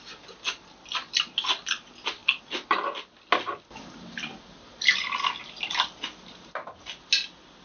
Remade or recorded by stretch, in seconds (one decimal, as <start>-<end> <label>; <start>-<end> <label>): 0.0-7.6 recorded